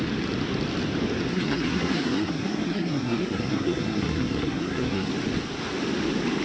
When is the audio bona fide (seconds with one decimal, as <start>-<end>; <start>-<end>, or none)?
0.0-1.3; 5.1-6.4